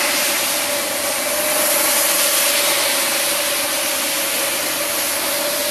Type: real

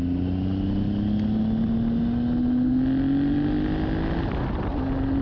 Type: real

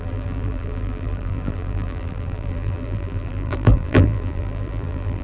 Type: fake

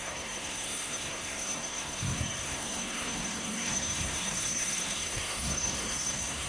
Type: fake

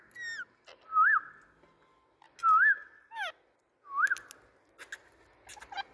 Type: real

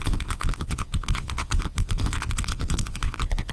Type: fake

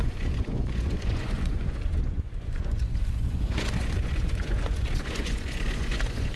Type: fake